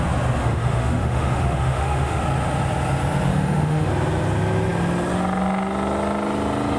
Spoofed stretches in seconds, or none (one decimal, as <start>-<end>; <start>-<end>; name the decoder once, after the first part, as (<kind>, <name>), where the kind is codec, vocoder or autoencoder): 0.4-2.2 (autoencoder, DAC-VAE); 3.3-3.9